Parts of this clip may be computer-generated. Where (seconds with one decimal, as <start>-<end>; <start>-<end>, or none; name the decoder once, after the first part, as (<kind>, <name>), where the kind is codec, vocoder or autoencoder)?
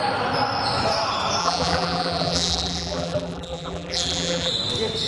1.4-4.5 (vocoder, BigVGAN v2)